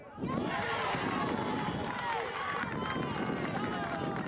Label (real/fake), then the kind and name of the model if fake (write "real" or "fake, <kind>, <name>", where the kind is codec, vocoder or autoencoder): real